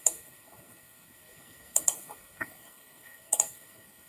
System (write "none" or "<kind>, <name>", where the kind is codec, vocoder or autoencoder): codec, SNAC